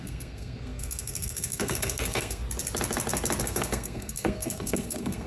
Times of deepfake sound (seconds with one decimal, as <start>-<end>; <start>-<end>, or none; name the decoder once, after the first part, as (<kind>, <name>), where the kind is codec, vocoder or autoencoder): 0.0-2.4 (codec, SNAC); 3.4-5.3